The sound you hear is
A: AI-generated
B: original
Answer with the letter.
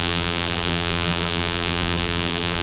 A